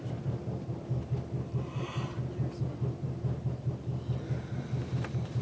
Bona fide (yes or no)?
no